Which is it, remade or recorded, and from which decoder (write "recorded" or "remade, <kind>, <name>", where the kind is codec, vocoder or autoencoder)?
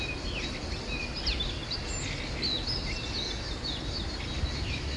recorded